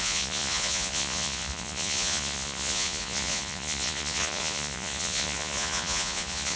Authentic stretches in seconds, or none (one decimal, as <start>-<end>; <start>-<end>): none